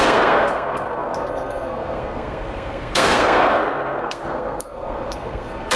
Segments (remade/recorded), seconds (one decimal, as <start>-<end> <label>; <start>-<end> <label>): 0.0-5.8 remade